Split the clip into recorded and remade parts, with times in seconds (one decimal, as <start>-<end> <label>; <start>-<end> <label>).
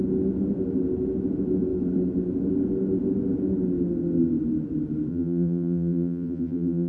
0.0-5.1 recorded; 5.1-6.9 remade